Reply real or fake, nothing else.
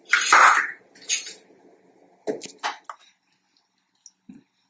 real